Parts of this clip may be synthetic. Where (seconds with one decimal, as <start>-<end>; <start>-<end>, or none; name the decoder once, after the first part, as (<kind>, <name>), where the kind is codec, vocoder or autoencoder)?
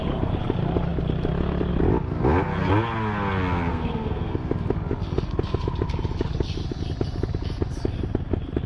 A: 3.7-4.3 (codec, SNAC)